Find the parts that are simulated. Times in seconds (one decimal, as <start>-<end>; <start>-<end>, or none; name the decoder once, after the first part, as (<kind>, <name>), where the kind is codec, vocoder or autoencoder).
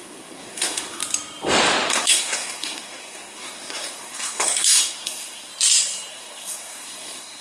0.0-1.0 (codec, SNAC); 1.9-5.5; 6.1-7.4